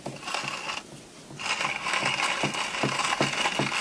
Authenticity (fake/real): real